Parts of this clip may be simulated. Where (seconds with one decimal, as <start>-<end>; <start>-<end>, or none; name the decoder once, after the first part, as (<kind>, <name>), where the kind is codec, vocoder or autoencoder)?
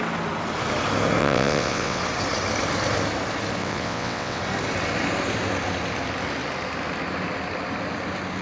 1.2-2.0 (vocoder, WaveNeXt); 3.6-4.4